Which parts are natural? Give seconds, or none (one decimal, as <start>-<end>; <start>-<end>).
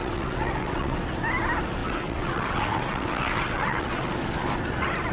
1.0-1.8; 4.1-5.1